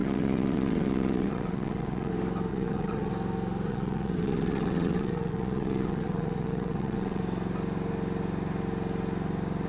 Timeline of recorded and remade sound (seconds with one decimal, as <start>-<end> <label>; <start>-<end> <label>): 0.0-2.1 remade; 2.1-2.5 recorded; 2.5-3.1 remade; 3.1-3.7 recorded; 3.7-7.2 remade; 7.2-9.7 recorded